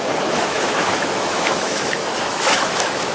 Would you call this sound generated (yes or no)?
yes